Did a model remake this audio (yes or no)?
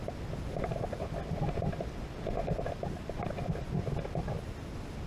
no